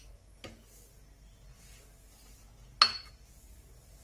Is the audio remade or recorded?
recorded